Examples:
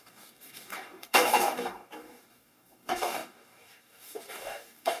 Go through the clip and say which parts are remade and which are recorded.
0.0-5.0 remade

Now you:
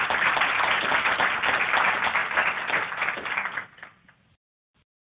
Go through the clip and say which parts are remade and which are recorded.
0.0-5.1 recorded